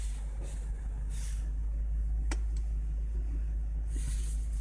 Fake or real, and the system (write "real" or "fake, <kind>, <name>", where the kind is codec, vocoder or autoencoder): real